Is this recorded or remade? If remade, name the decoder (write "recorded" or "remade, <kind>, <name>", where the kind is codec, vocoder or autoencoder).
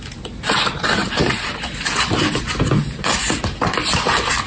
recorded